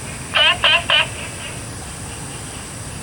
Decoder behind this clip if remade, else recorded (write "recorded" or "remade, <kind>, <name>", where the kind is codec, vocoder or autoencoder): recorded